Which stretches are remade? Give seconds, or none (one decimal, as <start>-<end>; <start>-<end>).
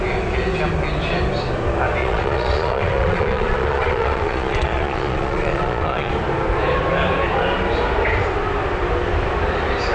2.0-6.1